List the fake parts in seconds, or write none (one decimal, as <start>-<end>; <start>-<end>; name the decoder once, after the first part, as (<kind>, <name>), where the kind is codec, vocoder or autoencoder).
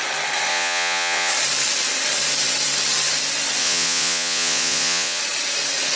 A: 0.5-1.3 (vocoder, Vocos); 3.6-5.2